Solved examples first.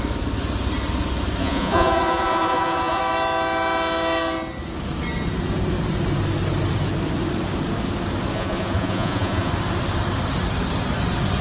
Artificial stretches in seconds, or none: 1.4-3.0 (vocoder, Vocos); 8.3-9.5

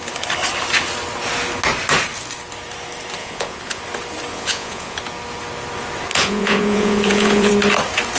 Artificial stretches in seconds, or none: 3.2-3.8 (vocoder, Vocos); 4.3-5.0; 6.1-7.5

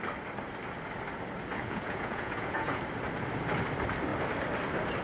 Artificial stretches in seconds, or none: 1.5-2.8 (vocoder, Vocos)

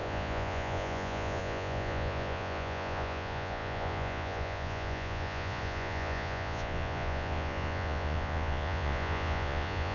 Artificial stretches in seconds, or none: 0.0-9.9 (vocoder, Vocos)